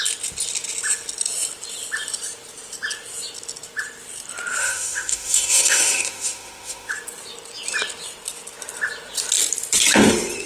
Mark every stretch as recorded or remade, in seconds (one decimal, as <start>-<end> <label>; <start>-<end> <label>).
0.0-4.6 recorded; 4.6-6.9 remade; 6.9-10.5 recorded